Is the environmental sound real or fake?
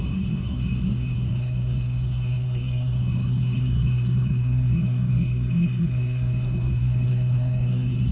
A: fake